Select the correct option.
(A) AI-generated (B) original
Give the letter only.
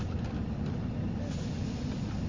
B